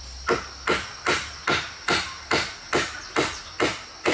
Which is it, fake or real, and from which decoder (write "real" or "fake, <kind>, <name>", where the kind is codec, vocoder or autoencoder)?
real